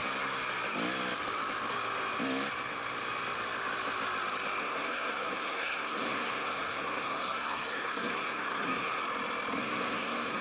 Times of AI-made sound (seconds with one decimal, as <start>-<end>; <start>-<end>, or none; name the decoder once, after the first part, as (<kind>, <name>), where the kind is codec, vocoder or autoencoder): 4.6-9.0 (codec, SNAC); 9.6-10.4